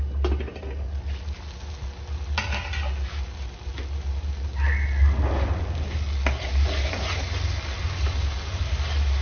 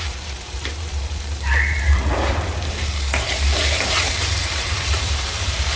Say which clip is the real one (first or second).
first